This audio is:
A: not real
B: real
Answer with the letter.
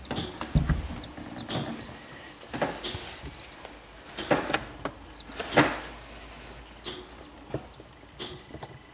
B